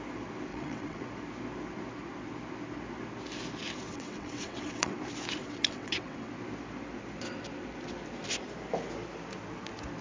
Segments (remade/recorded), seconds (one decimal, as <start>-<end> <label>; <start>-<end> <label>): 0.0-0.5 recorded; 0.5-1.1 remade; 1.1-3.9 recorded; 3.9-5.0 remade; 5.0-5.4 recorded; 5.4-6.3 remade; 6.3-10.0 recorded